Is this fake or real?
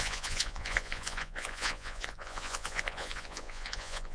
fake